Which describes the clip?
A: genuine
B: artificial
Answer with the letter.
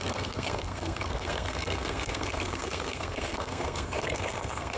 B